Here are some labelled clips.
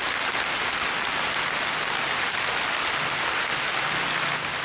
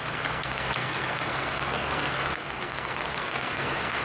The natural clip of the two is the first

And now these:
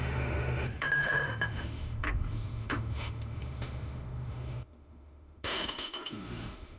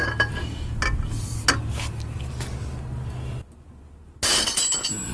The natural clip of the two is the second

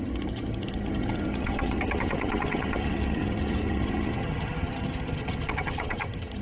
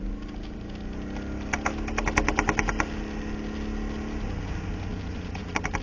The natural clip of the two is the second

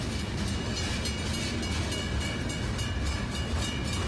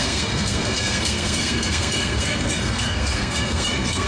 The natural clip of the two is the first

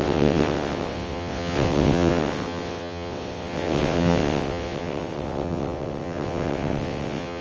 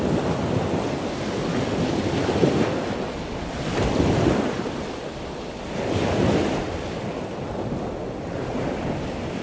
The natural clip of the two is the second